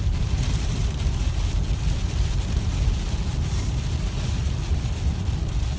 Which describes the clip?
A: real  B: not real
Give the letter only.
B